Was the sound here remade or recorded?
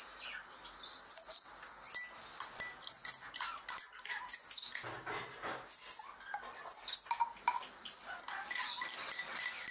recorded